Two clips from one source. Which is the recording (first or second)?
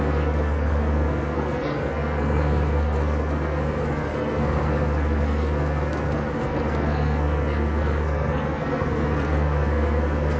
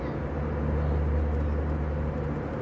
second